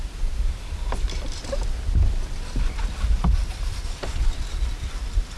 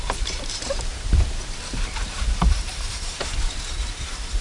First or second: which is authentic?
first